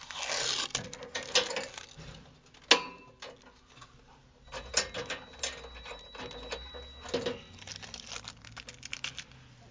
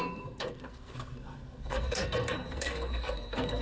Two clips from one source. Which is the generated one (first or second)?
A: second